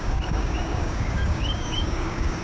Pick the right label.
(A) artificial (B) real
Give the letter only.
A